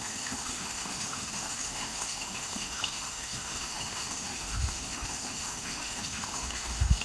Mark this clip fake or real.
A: fake